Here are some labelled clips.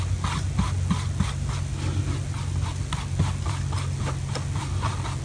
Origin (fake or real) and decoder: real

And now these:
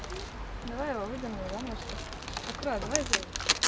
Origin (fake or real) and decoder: real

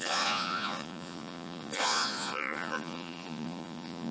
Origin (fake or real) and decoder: fake, vocoder, Vocos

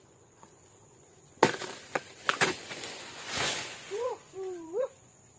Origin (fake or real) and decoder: fake, vocoder, Vocos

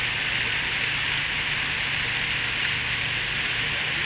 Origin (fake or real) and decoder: real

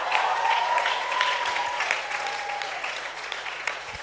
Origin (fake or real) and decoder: fake, vocoder, Vocos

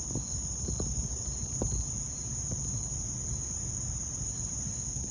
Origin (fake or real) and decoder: real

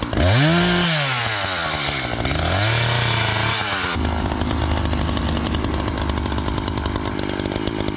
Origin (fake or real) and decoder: real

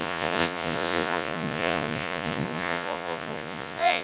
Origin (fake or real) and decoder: fake, vocoder, Vocos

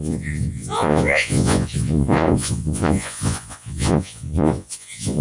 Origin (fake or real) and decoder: fake, vocoder, Vocos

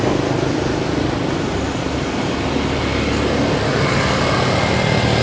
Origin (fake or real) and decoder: real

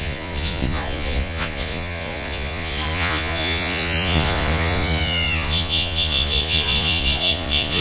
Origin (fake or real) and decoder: fake, vocoder, Vocos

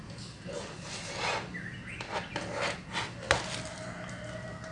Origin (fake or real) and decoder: real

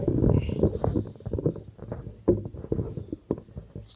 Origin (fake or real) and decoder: real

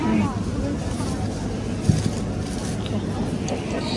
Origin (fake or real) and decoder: real